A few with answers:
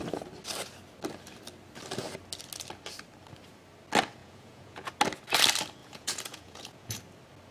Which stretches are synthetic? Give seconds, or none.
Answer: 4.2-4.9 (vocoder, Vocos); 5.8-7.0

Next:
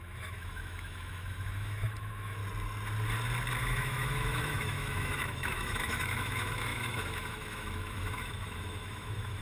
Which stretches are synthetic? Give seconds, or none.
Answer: 0.0-2.4 (autoencoder, DAC-VAE); 3.6-9.4